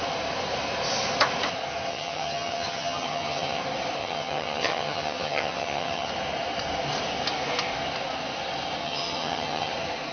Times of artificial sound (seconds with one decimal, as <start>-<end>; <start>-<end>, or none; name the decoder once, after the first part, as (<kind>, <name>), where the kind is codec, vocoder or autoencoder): 1.9-3.6 (vocoder, HiFi-GAN); 4.0-6.1; 8.8-9.7